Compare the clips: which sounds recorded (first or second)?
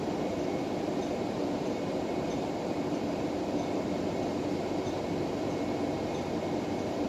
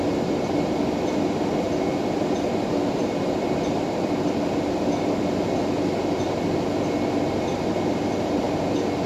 second